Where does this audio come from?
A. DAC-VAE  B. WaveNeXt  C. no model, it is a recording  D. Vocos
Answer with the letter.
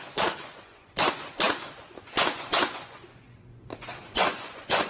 D